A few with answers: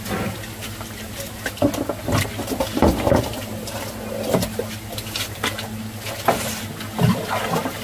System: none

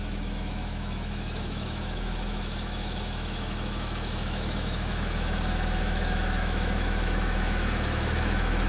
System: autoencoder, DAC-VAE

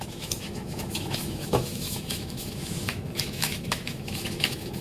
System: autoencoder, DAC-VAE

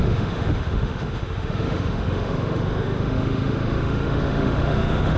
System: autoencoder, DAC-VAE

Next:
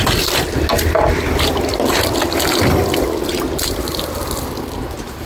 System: none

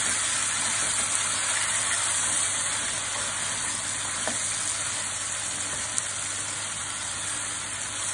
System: none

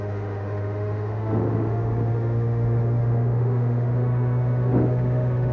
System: autoencoder, DAC-VAE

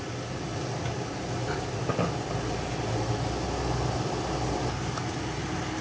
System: none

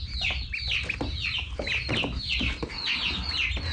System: none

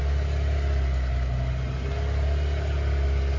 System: none